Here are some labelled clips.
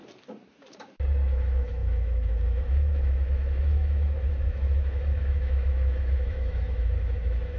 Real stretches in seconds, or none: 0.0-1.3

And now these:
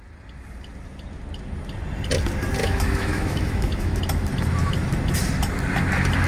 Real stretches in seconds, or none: 0.0-2.6; 4.0-6.3

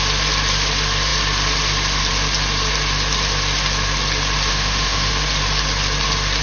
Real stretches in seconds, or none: 0.0-4.5; 5.1-6.4